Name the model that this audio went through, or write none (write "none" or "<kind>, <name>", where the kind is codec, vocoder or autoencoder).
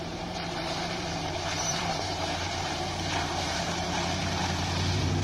vocoder, BigVGAN v2